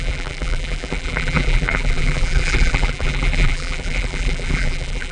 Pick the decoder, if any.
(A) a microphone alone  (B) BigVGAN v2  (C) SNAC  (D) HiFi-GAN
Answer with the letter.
B